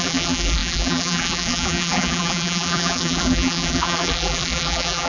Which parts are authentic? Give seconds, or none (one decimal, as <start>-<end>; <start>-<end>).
none